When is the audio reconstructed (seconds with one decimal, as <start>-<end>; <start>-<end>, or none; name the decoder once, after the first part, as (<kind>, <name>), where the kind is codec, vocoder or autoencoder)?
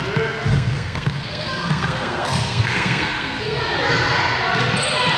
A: 0.5-3.6 (codec, SNAC)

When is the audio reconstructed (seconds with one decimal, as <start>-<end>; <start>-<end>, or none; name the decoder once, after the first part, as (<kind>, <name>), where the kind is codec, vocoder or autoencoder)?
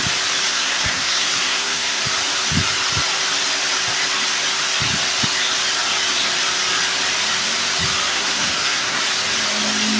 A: 0.5-2.0 (codec, SNAC); 8.1-9.0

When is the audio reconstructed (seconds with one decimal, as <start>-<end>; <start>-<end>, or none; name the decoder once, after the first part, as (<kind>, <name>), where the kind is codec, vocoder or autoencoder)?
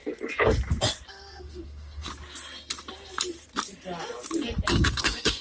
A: 1.1-2.1 (codec, SNAC); 4.7-5.4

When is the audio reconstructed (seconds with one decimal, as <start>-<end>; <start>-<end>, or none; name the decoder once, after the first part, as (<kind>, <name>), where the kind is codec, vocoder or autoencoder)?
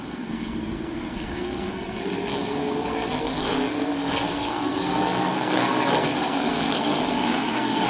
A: 0.0-7.9 (codec, SNAC)